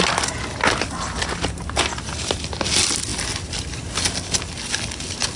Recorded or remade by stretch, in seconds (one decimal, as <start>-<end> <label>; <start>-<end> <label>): 0.0-5.4 recorded